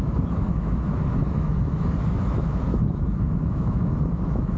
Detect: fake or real fake